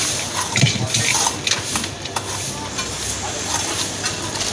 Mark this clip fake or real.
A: real